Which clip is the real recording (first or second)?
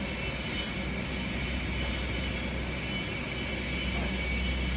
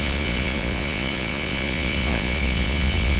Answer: first